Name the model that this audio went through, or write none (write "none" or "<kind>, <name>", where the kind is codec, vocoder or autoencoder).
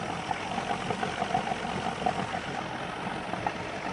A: none